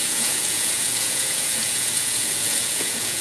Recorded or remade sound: remade